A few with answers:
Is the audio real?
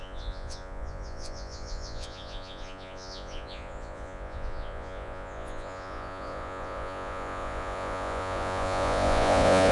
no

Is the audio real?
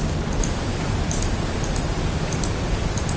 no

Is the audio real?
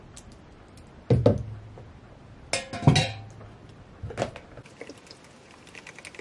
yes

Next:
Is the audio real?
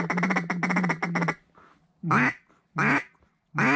yes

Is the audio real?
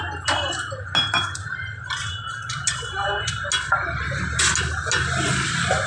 yes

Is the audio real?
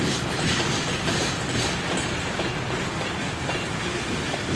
yes